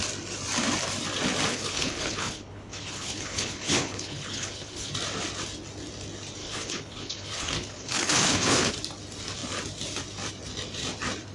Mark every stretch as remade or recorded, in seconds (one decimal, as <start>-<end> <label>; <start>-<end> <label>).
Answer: 0.0-1.5 recorded; 1.5-4.9 remade; 4.9-6.4 recorded; 6.4-8.7 remade; 8.7-11.3 recorded